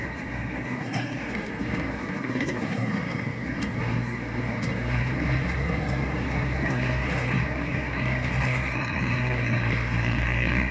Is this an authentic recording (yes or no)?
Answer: no